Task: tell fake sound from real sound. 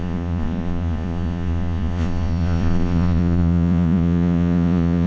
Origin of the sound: fake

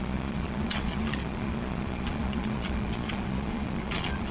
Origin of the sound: fake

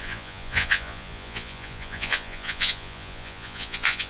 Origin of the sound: fake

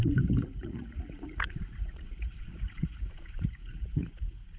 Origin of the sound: fake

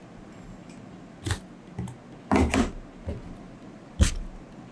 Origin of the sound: real